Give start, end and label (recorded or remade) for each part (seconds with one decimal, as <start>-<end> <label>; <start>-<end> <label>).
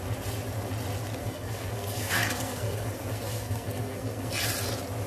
0.0-1.2 recorded; 1.2-4.3 remade; 4.3-5.1 recorded